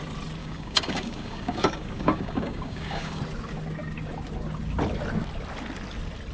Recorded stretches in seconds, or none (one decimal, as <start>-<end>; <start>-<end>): 0.0-0.4; 3.2-6.3